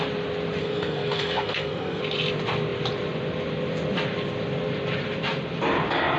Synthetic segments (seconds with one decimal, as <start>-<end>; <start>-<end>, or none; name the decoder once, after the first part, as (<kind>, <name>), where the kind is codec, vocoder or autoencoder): 0.6-2.0 (codec, SNAC)